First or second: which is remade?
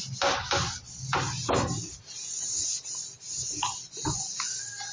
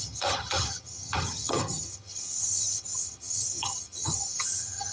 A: second